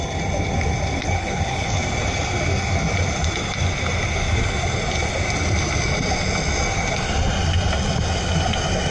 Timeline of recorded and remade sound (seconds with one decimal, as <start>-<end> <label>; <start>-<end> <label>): 0.0-1.0 recorded; 1.0-1.8 remade; 1.8-8.9 recorded